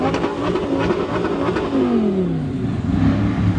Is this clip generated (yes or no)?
no